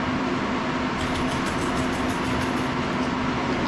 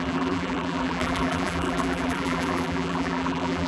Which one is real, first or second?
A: first